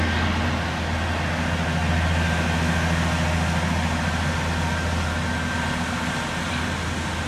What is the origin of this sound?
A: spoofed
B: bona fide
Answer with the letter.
B